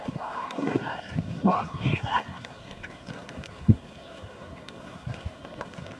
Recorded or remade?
remade